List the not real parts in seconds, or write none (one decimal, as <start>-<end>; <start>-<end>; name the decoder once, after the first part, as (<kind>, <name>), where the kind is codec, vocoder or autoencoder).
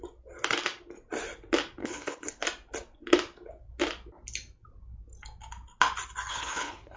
1.8-2.4 (codec, HILCodec); 6.3-7.0